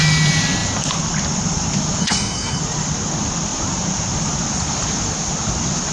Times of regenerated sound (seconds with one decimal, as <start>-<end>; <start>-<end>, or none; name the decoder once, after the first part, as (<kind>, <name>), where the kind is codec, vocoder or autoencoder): 2.0-2.6 (codec, SNAC)